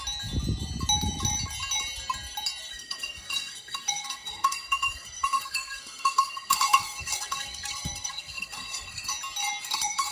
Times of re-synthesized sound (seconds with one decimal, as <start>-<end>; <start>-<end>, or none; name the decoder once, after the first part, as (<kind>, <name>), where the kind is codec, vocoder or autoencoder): 2.7-9.1 (codec, SNAC); 9.6-10.1